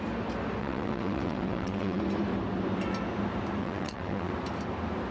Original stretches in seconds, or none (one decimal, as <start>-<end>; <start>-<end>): 0.0-0.6; 2.0-3.6; 4.3-5.1